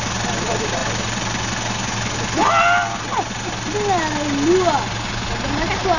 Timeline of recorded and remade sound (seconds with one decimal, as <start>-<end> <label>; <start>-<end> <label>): 0.0-6.0 recorded